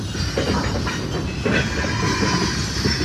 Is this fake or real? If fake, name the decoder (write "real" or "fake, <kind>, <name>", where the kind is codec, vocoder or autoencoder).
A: real